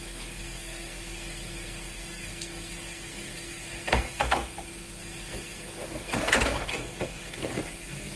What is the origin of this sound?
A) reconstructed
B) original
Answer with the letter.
A